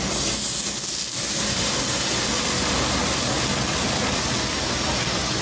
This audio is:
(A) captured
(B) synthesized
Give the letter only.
A